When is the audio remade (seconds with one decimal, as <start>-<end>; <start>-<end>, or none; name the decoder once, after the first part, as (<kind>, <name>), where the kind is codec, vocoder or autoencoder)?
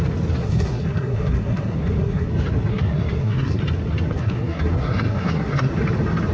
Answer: 0.4-2.3 (codec, SNAC); 2.7-3.6; 4.1-5.7